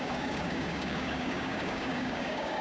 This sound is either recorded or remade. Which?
remade